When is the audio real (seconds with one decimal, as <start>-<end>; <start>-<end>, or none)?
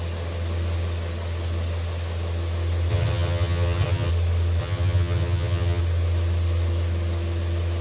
0.0-2.9; 4.1-4.6; 5.8-7.8